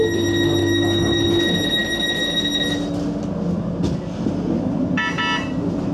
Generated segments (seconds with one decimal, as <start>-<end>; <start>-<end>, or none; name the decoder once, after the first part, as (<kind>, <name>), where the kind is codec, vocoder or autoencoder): 0.6-1.2 (autoencoder, DAC-VAE)